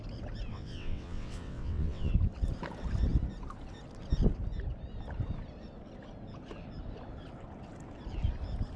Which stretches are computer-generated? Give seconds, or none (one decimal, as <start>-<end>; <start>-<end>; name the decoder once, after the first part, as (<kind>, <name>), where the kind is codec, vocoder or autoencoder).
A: 0.5-2.1 (vocoder, WaveNeXt)